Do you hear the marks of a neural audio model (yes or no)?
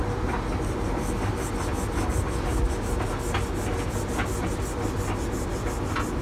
no